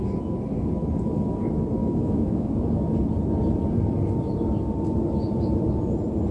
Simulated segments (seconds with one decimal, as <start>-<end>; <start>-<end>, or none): 1.8-2.5